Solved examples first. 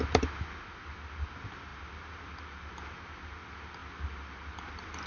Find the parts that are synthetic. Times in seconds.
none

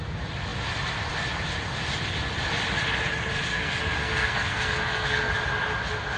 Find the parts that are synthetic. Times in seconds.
3.5-5.3 (codec, SNAC)